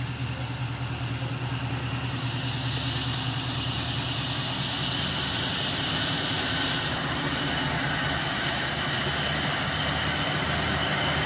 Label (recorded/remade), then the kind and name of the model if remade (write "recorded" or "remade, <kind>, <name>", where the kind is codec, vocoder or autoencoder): recorded